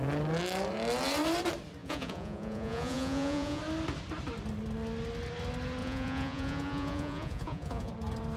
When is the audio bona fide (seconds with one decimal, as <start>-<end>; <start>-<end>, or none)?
0.0-1.8; 3.6-5.8; 7.9-8.4